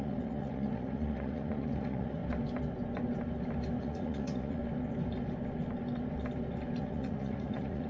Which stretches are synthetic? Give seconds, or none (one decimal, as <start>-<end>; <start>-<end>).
0.0-2.2; 3.8-4.6; 6.8-7.9